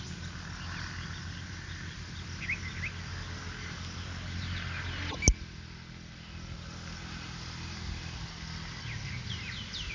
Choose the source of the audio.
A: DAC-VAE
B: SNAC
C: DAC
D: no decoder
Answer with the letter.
D